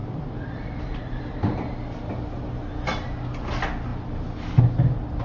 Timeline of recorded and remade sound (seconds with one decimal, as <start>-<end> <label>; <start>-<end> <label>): 0.0-2.1 remade; 2.1-5.2 recorded